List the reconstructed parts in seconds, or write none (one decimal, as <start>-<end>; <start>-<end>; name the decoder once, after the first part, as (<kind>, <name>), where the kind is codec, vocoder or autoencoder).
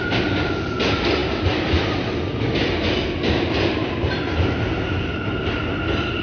none